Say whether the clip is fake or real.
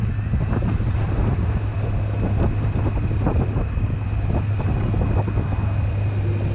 real